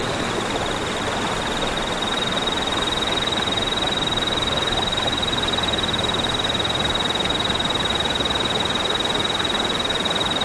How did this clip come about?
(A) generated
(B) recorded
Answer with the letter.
A